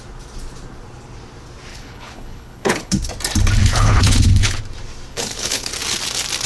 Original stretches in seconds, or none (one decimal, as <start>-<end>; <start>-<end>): 0.0-1.7; 3.1-3.6; 4.6-5.1; 5.7-6.5